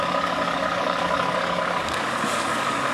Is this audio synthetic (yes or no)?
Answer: yes